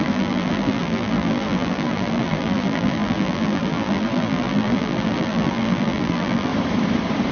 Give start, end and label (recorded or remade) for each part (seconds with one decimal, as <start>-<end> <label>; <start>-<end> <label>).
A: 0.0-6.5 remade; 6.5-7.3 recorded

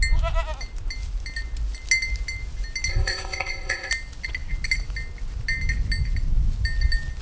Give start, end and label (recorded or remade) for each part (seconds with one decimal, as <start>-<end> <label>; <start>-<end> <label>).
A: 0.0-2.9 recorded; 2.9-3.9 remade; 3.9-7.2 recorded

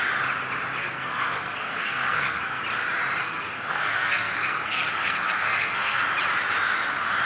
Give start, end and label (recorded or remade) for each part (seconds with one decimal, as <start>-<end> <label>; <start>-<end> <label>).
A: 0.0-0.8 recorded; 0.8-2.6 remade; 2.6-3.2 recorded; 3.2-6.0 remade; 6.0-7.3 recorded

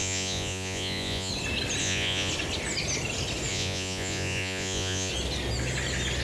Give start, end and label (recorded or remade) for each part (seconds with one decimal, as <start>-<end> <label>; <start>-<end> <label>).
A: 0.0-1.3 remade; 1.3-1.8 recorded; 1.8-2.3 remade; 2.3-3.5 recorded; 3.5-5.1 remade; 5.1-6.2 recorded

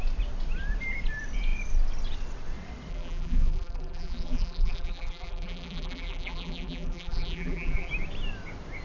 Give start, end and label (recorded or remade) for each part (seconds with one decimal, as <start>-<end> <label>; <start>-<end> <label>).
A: 0.0-2.9 recorded; 2.9-7.9 remade; 7.9-8.8 recorded